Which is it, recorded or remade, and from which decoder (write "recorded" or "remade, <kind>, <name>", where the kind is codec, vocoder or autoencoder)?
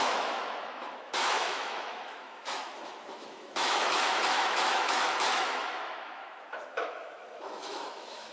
remade, autoencoder, DAC-VAE